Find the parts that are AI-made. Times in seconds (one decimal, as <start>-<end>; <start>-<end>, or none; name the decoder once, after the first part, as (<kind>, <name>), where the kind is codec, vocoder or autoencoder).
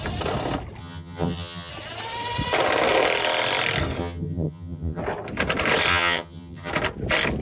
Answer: 0.8-1.7 (vocoder, HiFi-GAN); 4.0-5.0; 5.9-6.7